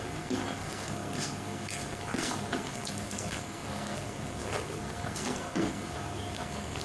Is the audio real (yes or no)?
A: no